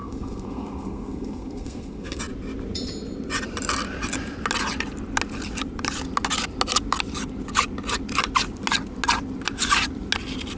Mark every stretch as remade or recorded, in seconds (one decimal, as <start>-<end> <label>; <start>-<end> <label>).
0.0-2.2 remade; 2.2-10.6 recorded